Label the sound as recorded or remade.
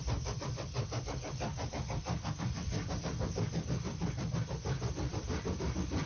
recorded